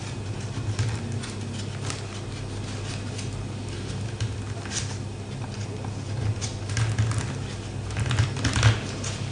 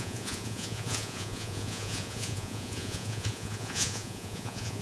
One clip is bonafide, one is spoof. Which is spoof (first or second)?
second